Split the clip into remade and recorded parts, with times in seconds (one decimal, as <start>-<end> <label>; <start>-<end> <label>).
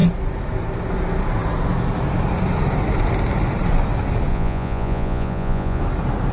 0.0-4.3 recorded; 4.3-5.8 remade; 5.8-6.3 recorded